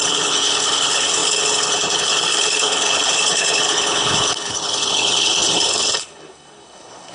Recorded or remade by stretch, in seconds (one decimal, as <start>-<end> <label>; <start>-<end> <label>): 0.0-7.1 remade